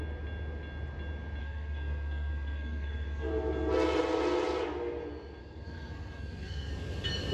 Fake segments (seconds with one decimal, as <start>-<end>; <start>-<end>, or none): 1.4-3.3; 5.4-6.7